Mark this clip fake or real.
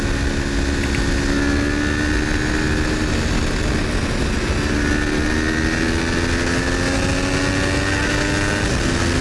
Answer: real